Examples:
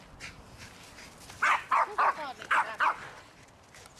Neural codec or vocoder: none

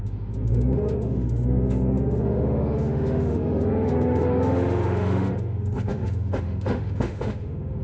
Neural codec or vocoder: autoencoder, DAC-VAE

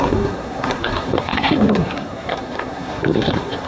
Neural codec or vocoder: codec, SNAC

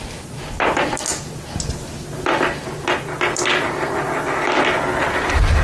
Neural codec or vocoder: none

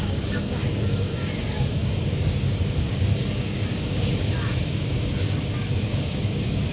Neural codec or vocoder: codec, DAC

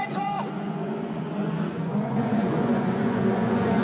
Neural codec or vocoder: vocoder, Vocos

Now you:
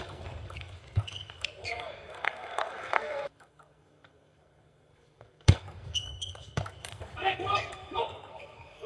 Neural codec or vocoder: codec, SNAC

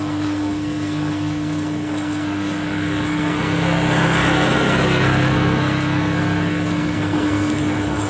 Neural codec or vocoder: codec, SNAC